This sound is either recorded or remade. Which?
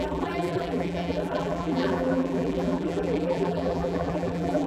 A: remade